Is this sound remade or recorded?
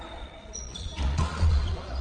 remade